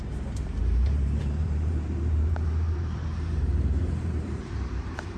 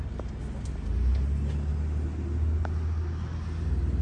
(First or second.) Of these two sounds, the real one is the second